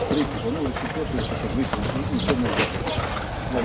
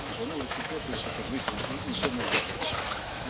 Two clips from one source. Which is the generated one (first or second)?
second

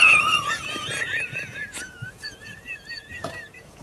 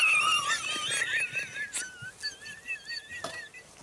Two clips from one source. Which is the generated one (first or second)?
first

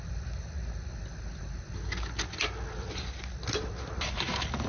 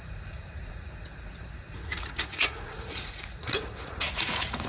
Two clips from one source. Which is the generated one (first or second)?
second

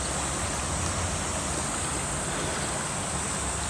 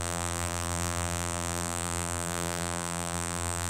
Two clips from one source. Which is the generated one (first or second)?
second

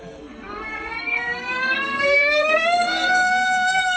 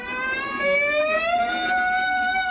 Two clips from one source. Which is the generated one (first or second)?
first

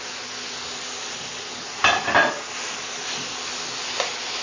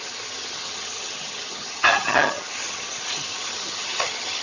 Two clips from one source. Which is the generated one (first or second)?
second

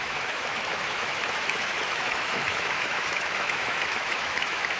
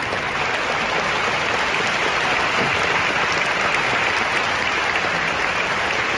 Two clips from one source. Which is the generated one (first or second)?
first